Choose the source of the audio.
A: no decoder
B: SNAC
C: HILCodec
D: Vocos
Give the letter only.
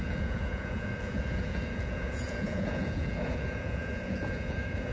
D